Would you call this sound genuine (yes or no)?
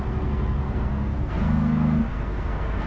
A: no